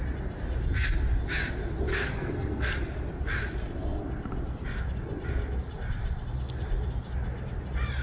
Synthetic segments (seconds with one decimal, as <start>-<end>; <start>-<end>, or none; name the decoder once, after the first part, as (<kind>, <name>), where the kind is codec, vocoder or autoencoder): 1.9-2.7 (codec, SNAC)